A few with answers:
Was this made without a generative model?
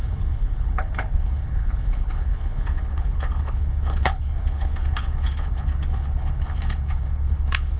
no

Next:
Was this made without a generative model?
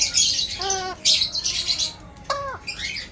yes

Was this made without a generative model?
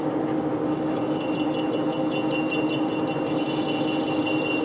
yes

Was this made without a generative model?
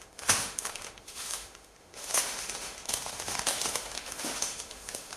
no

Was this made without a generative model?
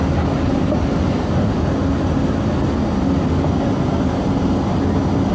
yes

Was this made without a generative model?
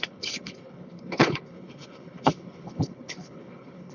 no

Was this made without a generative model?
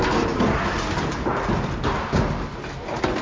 yes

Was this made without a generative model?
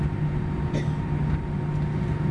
yes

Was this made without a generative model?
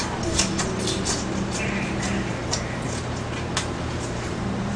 no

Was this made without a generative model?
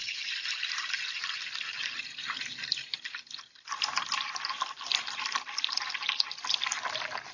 yes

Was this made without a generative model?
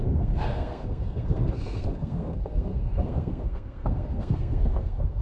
no